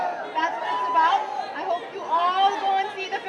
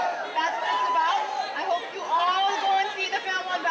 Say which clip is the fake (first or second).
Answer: second